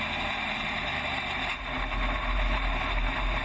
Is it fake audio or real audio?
real